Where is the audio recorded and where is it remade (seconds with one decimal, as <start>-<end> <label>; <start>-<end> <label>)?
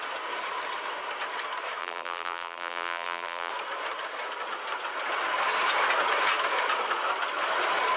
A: 0.0-1.8 recorded; 1.8-3.5 remade; 3.5-8.0 recorded